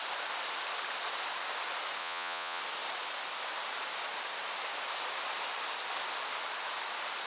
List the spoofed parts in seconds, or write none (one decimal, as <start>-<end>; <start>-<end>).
2.0-2.6